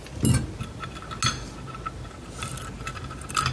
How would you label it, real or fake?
real